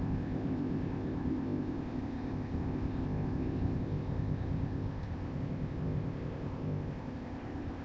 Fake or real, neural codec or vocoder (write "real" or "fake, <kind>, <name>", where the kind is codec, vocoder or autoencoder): fake, codec, ZipCodec